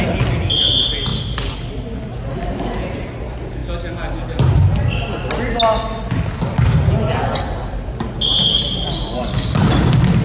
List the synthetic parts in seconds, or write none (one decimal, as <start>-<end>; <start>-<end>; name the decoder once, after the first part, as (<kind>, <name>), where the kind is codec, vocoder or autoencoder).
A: none